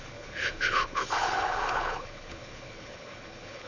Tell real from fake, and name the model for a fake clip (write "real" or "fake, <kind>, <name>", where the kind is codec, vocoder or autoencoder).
fake, codec, HILCodec